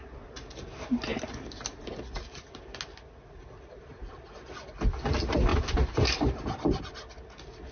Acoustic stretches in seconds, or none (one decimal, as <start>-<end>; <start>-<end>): 0.0-7.7